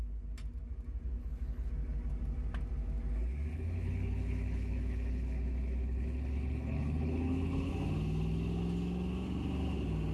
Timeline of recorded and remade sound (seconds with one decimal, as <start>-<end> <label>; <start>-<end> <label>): 0.0-1.2 recorded; 1.2-1.7 remade; 1.7-3.5 recorded; 3.5-7.7 remade; 7.7-10.1 recorded

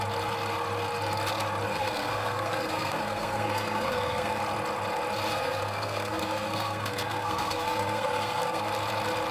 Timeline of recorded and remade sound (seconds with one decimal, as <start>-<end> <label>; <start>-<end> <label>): 0.0-1.7 recorded; 1.7-4.4 remade; 4.4-5.3 recorded; 5.3-8.6 remade; 8.6-9.3 recorded

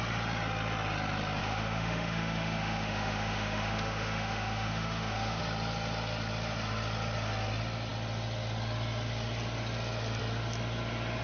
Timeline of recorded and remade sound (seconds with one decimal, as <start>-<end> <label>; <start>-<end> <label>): 0.0-1.4 recorded; 1.4-5.4 remade; 5.4-11.2 recorded